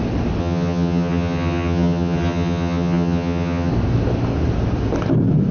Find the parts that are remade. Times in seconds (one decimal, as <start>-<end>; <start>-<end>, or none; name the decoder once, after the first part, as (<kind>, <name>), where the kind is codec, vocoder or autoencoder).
0.4-3.7 (vocoder, HiFi-GAN)

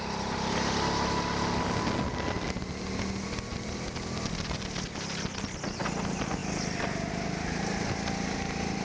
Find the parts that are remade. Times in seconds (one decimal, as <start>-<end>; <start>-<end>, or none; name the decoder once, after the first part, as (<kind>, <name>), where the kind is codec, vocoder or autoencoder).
none